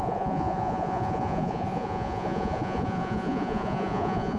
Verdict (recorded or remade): remade